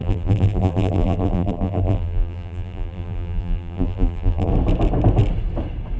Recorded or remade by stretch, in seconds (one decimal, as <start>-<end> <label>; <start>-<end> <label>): 0.0-4.5 remade; 4.5-6.0 recorded